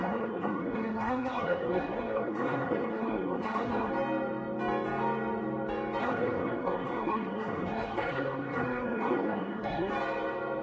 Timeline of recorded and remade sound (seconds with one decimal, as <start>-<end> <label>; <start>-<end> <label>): 0.0-3.9 remade; 3.9-6.0 recorded; 6.0-9.9 remade; 9.9-10.6 recorded